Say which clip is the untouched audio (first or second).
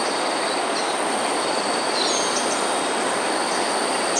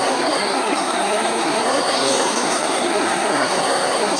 first